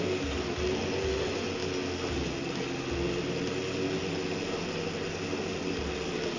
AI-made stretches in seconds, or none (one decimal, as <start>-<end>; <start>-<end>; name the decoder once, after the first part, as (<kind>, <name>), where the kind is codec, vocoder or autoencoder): none